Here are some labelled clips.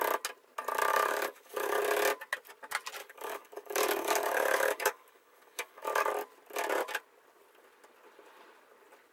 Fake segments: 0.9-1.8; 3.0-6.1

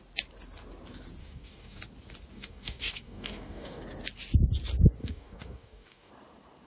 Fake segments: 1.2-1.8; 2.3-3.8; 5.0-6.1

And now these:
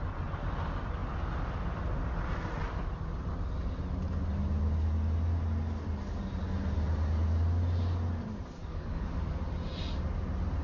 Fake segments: 8.6-9.4

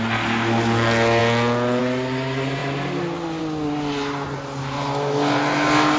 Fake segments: none